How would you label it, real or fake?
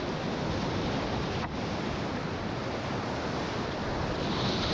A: real